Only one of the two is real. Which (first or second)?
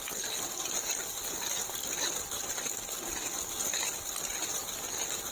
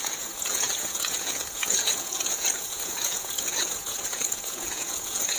first